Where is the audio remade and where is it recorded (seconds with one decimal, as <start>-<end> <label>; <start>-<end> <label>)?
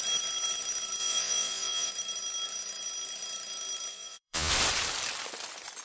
0.0-1.0 recorded; 1.0-1.9 remade; 1.9-3.9 recorded; 3.9-4.5 remade; 4.5-5.8 recorded